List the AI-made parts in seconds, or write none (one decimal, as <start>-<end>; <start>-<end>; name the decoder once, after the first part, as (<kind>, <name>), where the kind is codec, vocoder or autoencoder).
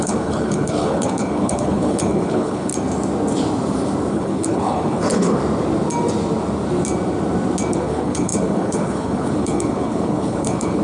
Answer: 0.0-2.7 (codec, HILCodec); 4.1-5.4; 7.7-10.8